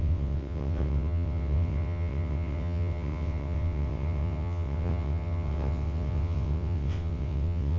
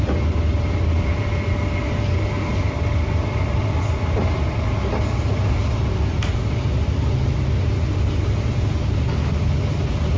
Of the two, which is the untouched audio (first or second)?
second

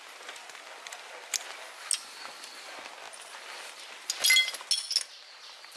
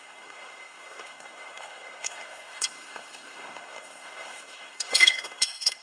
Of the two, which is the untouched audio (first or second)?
first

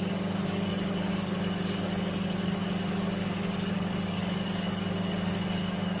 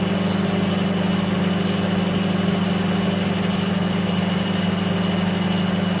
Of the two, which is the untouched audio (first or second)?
second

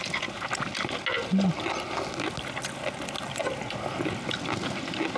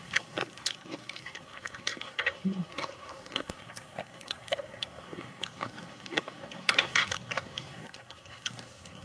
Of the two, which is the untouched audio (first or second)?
first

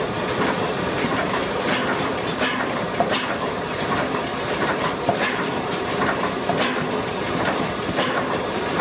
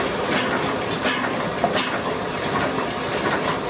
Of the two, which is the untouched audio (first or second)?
second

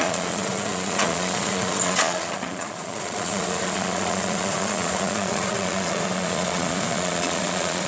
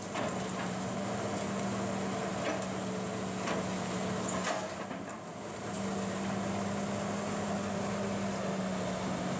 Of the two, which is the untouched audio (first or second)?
second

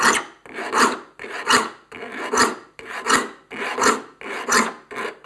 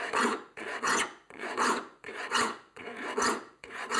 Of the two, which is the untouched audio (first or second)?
first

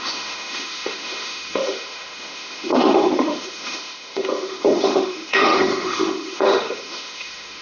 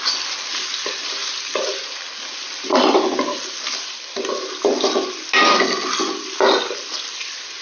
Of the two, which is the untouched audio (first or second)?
second